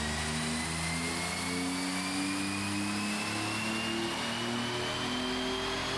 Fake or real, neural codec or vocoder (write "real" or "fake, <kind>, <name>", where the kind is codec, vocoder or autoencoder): real